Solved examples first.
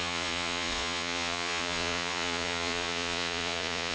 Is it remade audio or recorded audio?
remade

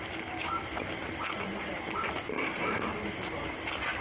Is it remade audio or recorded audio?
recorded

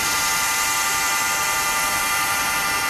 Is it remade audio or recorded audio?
remade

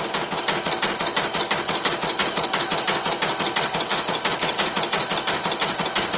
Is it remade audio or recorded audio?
recorded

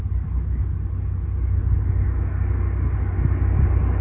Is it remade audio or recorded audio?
recorded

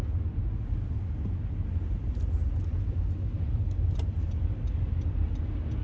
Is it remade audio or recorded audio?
recorded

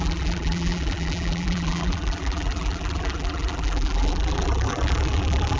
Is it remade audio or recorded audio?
remade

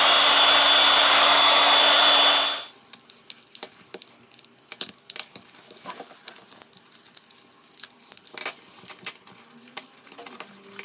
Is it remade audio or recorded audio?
recorded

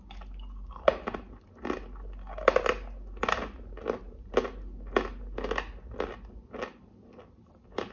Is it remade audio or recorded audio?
recorded